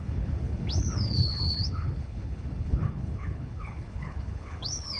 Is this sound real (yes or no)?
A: no